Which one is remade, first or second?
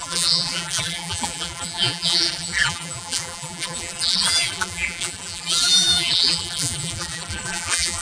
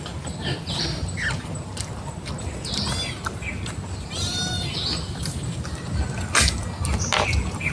first